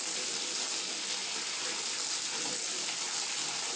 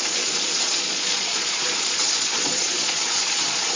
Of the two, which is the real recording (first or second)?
first